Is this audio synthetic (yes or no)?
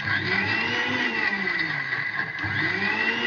no